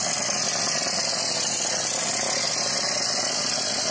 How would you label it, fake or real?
real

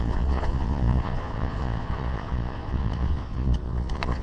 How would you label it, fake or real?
fake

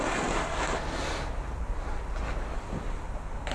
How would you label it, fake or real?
real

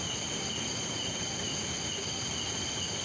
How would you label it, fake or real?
real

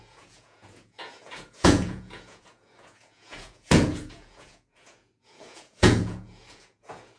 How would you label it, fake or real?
fake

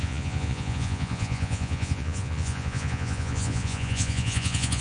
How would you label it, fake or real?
fake